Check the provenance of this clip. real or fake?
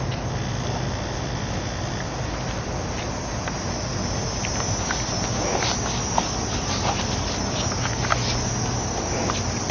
real